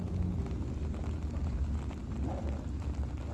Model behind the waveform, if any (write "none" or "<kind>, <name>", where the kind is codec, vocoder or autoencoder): none